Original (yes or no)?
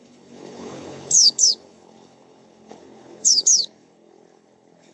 no